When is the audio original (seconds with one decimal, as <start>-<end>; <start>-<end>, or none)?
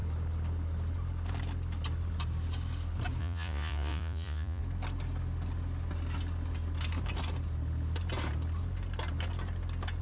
0.0-3.2; 4.6-10.0